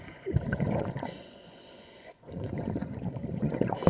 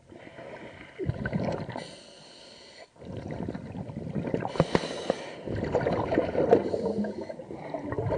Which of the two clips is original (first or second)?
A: second